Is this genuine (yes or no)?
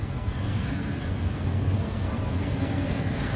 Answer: no